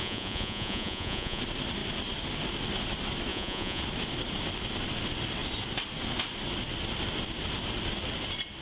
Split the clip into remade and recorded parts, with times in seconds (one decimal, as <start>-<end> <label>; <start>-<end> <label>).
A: 0.0-1.4 remade; 1.4-3.3 recorded; 3.3-3.8 remade; 3.8-8.6 recorded